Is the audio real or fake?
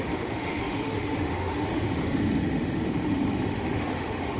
fake